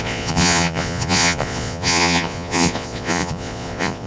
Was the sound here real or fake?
fake